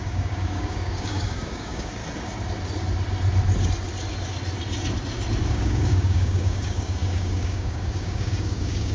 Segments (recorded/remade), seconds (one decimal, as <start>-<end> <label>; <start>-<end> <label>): 0.0-2.0 remade; 2.0-5.5 recorded; 5.5-8.9 remade